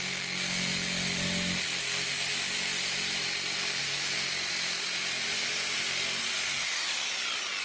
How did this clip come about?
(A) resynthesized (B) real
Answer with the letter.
B